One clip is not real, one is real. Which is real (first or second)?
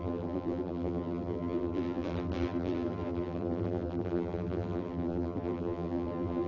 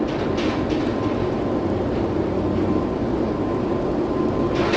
second